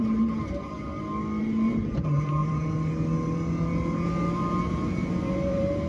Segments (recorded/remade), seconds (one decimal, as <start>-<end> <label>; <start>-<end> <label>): 0.0-0.9 remade; 0.9-1.4 recorded; 1.4-2.4 remade; 2.4-4.1 recorded; 4.1-5.9 remade